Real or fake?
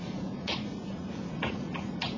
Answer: fake